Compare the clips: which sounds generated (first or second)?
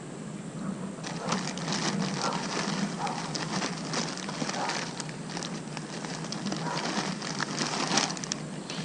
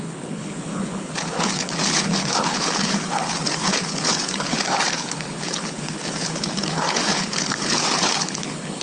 second